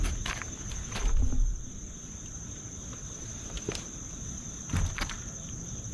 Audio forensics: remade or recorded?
recorded